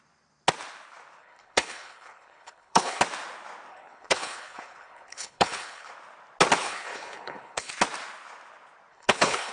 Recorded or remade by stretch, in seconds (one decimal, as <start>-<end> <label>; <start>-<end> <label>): 0.0-1.2 recorded; 1.2-3.0 remade; 3.0-3.7 recorded; 3.7-5.9 remade; 5.9-6.6 recorded; 6.6-7.7 remade; 7.7-8.9 recorded; 8.9-9.5 remade